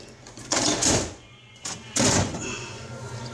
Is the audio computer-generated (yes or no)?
yes